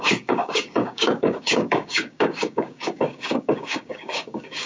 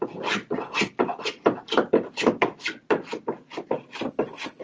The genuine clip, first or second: second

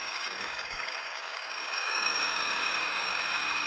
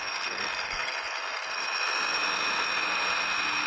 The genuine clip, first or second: second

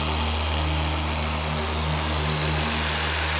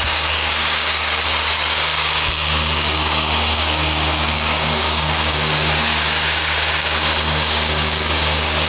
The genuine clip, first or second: first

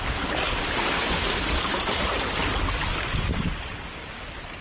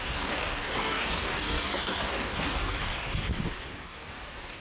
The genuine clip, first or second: first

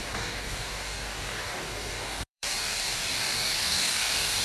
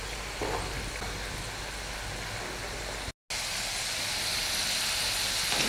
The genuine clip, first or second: second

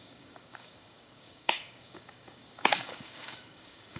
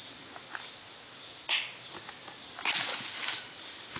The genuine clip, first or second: second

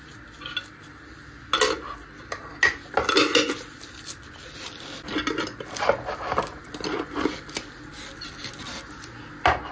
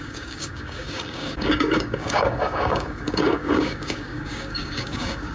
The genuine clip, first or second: first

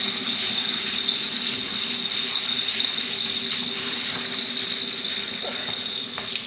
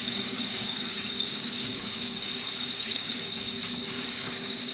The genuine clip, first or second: first